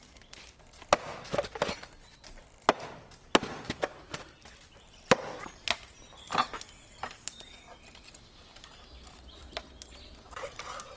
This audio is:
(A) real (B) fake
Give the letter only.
A